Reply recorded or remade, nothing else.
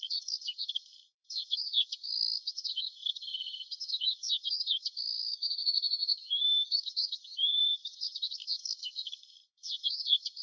remade